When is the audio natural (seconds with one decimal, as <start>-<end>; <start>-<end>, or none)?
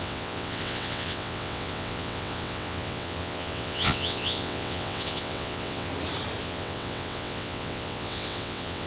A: 5.9-6.4